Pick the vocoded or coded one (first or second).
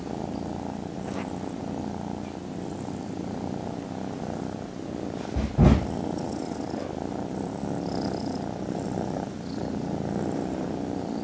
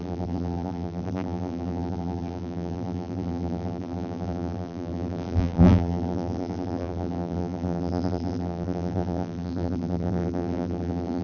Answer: second